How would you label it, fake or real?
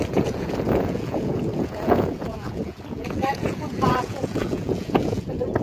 fake